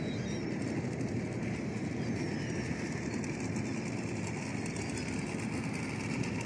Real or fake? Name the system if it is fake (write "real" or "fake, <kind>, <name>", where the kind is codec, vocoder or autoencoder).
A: real